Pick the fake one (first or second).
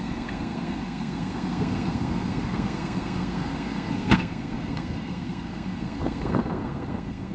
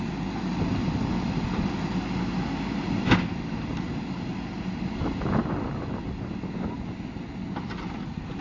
first